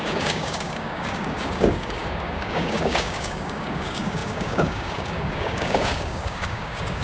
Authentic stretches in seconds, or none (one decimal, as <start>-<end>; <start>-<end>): none

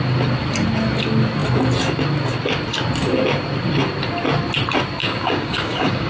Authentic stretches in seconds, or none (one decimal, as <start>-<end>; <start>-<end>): 0.0-5.0